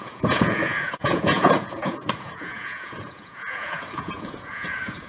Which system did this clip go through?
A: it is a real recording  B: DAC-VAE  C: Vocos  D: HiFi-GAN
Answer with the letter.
C